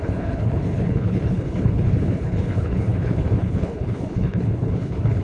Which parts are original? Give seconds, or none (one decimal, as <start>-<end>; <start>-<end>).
none